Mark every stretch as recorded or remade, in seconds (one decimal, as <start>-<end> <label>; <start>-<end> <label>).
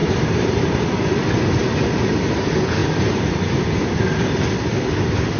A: 0.0-0.7 remade; 0.7-2.8 recorded; 2.8-3.8 remade; 3.8-5.4 recorded